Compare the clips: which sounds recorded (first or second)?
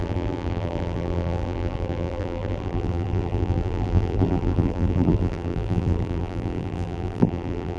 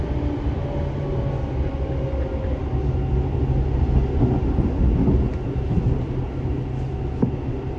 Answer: second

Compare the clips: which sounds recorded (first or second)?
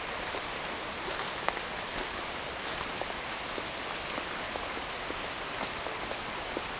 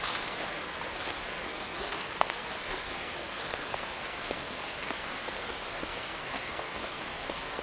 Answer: first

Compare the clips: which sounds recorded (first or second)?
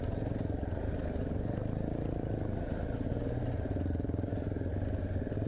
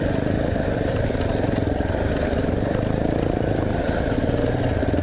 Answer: first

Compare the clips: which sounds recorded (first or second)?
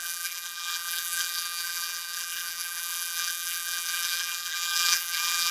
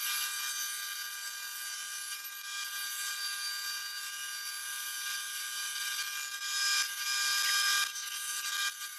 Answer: second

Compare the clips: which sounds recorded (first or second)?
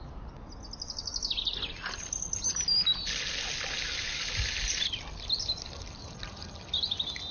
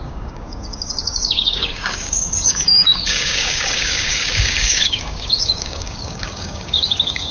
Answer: first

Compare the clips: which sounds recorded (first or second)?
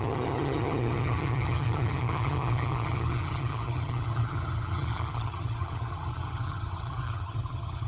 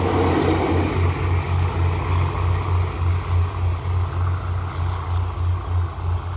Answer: second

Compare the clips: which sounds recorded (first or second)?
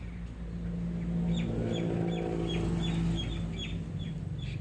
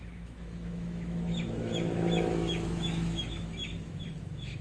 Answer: first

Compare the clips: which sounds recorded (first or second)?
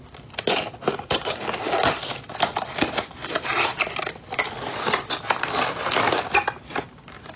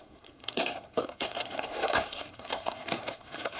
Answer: first